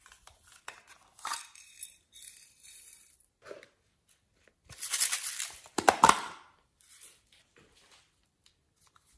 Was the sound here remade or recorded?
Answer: remade